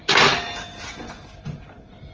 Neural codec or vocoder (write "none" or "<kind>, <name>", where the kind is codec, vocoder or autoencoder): none